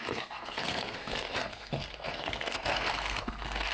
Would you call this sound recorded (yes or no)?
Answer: no